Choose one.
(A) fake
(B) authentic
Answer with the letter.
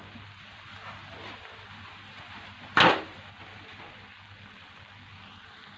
B